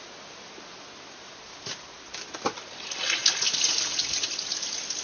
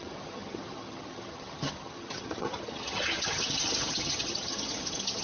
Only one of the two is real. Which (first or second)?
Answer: first